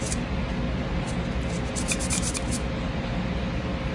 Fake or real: real